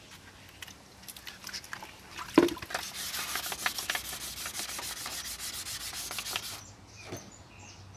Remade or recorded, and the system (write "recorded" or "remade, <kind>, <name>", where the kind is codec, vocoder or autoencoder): recorded